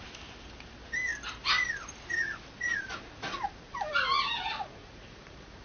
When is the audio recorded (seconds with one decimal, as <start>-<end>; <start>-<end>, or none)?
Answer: 0.0-4.8